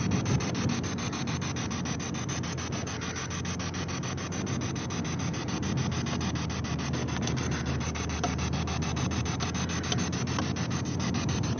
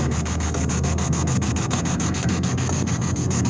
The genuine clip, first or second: first